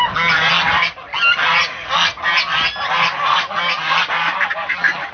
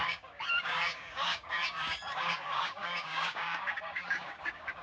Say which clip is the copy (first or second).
second